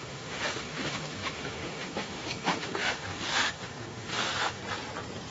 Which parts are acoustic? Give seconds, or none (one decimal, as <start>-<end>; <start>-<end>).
4.6-5.3